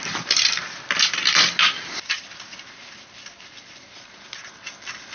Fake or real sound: real